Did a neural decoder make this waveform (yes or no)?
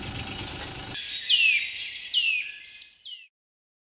no